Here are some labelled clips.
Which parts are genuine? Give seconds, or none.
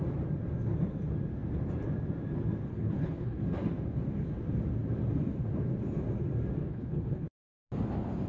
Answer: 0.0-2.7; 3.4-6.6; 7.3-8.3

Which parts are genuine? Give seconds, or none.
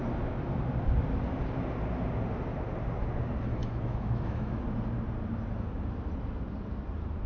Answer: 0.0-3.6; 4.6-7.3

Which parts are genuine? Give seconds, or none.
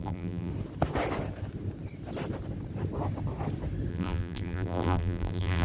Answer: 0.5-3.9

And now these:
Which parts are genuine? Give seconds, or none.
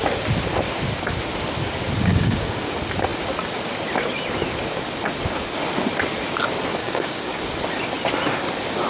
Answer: 0.0-2.1; 2.7-6.8; 7.4-8.9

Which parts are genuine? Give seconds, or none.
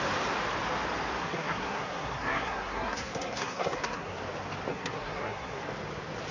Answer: 0.0-1.2; 4.2-4.7; 5.6-6.3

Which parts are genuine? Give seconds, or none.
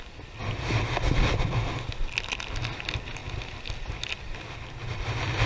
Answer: 0.0-5.5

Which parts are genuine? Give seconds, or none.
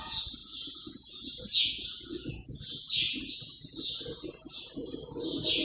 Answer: none